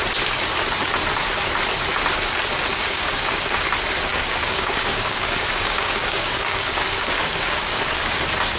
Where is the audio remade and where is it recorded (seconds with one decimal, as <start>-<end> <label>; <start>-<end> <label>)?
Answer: 0.0-2.7 recorded; 2.7-3.3 remade; 3.3-4.1 recorded; 4.1-8.2 remade; 8.2-8.6 recorded